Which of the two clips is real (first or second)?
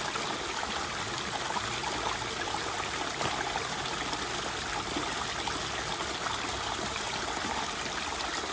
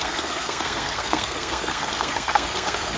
first